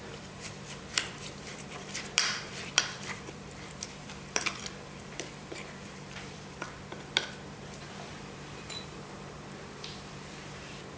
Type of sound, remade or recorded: remade